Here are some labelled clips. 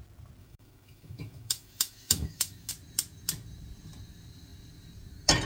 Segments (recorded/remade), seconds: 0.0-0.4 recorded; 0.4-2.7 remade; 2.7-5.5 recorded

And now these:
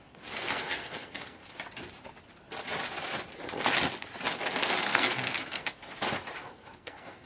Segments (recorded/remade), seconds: 0.0-1.4 remade; 1.4-4.8 recorded; 4.8-5.8 remade; 5.8-6.4 recorded; 6.4-7.3 remade

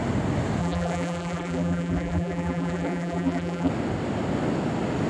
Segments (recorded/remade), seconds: 0.0-0.6 recorded; 0.6-3.7 remade; 3.7-5.1 recorded

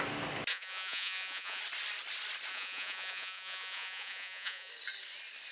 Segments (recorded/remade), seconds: 0.0-0.5 recorded; 0.5-1.6 remade; 1.6-2.5 recorded; 2.5-4.7 remade; 4.7-5.5 recorded

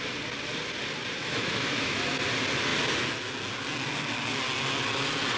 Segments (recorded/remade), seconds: 0.0-1.2 recorded; 1.2-2.1 remade; 2.1-5.4 recorded

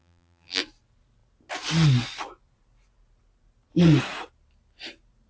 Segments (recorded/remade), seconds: 0.0-0.6 remade; 0.6-5.3 recorded

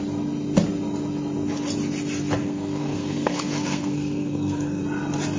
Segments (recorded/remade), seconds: 0.0-2.4 recorded; 2.4-4.8 remade; 4.8-5.4 recorded